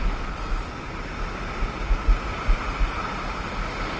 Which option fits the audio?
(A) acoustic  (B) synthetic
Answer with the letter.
A